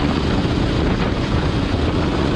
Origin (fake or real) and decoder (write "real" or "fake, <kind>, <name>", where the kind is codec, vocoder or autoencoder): fake, vocoder, Vocos